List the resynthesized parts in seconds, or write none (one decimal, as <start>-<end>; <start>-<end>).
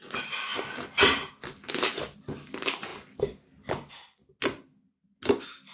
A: none